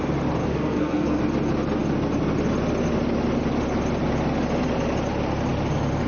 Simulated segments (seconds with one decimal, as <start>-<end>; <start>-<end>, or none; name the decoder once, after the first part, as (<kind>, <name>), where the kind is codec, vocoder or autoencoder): 0.5-1.2 (codec, SNAC)